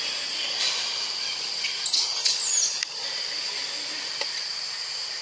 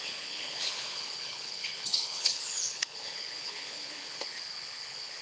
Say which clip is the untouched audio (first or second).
first